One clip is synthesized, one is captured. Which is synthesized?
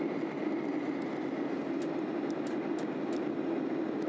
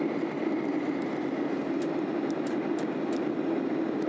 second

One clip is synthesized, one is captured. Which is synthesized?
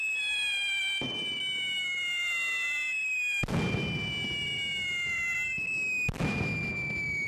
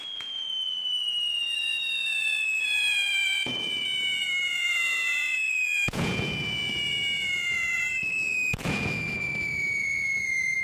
second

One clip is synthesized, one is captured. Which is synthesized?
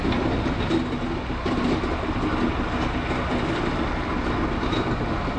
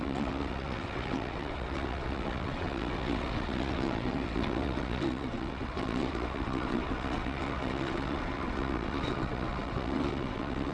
second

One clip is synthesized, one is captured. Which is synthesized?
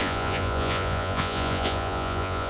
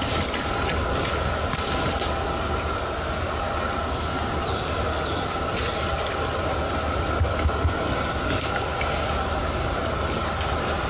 first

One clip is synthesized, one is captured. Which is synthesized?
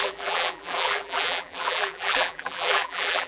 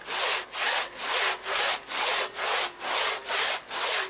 first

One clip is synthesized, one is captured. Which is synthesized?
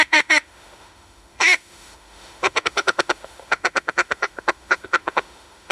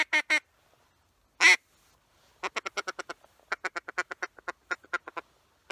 first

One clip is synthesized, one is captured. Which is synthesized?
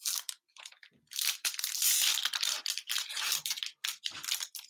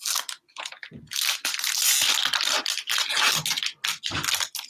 first